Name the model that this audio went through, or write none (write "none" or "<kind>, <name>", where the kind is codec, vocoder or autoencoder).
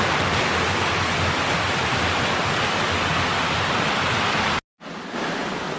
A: none